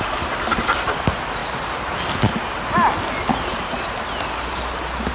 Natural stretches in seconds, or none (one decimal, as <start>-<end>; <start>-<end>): 0.0-5.1